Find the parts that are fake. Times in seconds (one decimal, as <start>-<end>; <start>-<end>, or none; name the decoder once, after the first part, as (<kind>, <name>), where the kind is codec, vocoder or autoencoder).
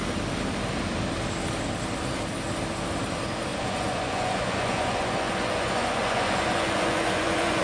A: 3.5-7.6 (vocoder, Vocos)